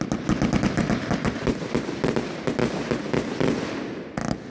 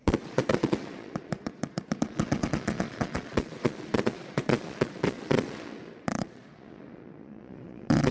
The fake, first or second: second